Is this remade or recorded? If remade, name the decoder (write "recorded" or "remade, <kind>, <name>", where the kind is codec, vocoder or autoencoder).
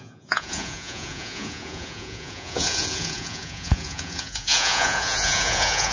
remade, vocoder, Vocos